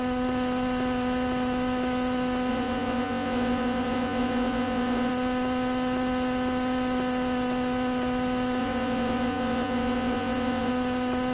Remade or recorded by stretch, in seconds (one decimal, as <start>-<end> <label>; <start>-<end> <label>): 0.0-2.5 recorded; 2.5-5.1 remade; 5.1-8.6 recorded; 8.6-10.7 remade; 10.7-11.3 recorded